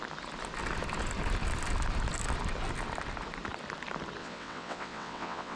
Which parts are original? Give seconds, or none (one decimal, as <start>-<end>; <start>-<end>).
0.0-4.2